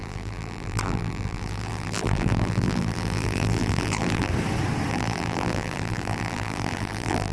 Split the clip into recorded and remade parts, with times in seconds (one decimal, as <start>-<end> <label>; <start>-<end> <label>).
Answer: 0.0-4.3 remade; 4.3-4.9 recorded; 4.9-7.3 remade